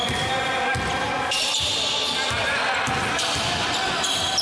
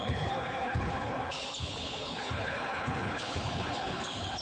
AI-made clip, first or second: second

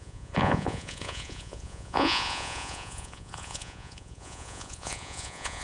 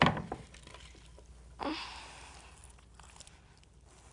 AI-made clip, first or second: first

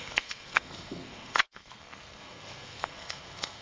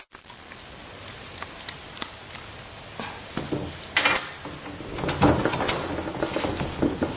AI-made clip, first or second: first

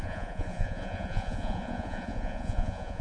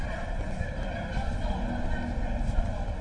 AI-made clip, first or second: first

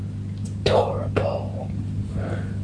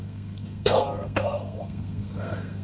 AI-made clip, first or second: second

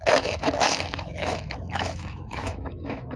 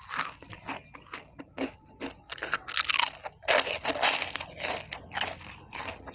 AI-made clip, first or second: first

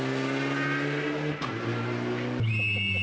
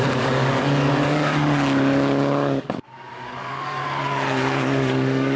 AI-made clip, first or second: second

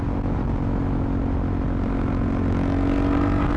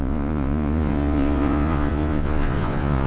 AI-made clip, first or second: second